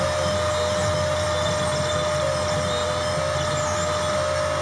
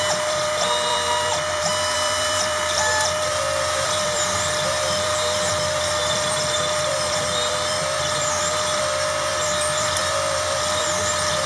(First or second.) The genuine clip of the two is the first